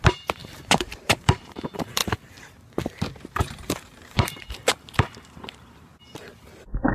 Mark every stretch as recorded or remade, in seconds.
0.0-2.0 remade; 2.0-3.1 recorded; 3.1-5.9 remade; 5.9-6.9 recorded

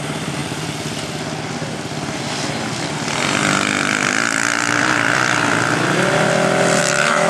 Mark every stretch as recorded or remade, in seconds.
0.0-6.8 recorded; 6.8-7.3 remade

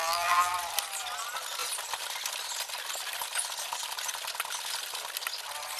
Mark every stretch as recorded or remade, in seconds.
0.0-0.5 remade; 0.5-5.8 recorded

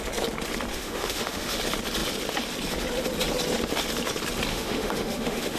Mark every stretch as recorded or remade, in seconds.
0.0-0.7 recorded; 0.7-1.6 remade; 1.6-4.5 recorded; 4.5-5.6 remade

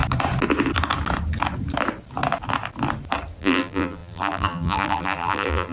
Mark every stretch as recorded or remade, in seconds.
0.0-3.4 recorded; 3.4-5.7 remade

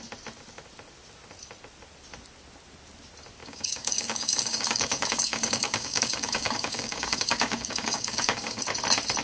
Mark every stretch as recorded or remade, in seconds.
0.0-3.4 recorded; 3.4-8.6 remade; 8.6-9.2 recorded